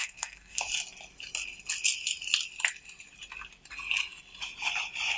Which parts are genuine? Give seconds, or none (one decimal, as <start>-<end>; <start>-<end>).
0.6-5.2